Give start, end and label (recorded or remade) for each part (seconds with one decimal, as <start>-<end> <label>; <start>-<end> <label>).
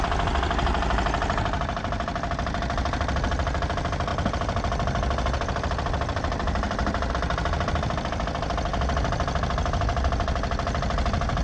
0.0-11.4 recorded